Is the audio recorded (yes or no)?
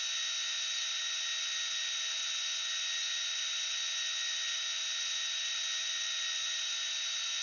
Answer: yes